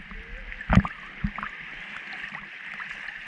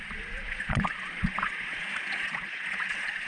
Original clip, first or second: first